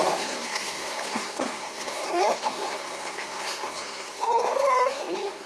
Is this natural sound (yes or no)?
no